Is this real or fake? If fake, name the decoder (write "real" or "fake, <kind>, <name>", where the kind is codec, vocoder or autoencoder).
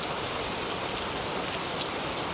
real